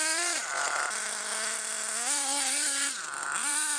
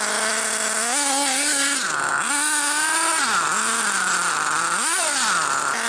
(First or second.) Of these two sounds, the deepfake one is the first